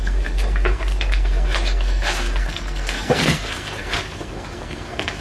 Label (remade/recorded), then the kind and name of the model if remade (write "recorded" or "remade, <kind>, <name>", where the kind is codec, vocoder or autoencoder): remade, codec, SNAC